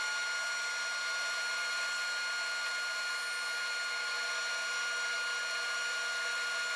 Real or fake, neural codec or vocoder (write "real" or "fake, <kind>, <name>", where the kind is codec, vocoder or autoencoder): real